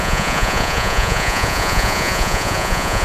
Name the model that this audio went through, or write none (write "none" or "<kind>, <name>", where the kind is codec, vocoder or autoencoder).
vocoder, Vocos